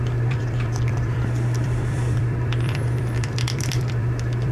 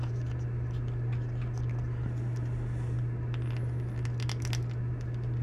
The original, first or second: second